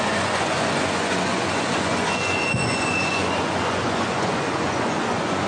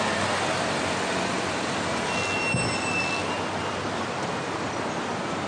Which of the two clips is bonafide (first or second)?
second